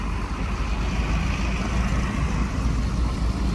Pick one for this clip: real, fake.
real